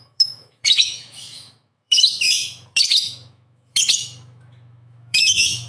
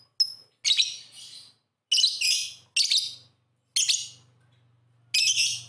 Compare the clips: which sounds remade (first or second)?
first